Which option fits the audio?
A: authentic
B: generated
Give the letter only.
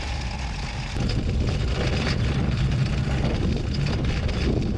A